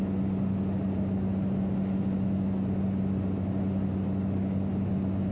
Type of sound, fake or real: real